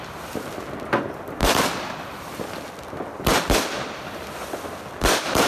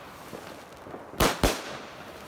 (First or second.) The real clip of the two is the second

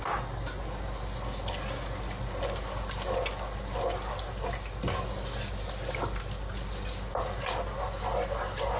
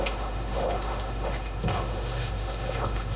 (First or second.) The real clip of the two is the first